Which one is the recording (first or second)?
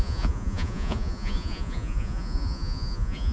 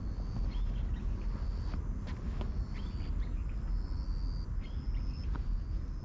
second